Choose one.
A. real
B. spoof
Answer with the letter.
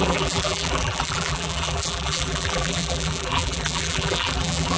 B